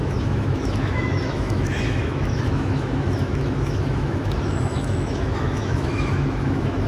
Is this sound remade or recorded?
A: remade